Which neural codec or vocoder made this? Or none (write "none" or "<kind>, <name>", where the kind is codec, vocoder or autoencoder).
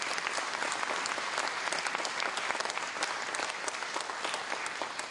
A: none